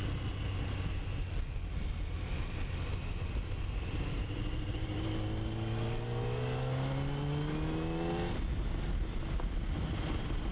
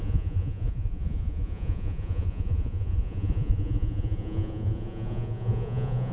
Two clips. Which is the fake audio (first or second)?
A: second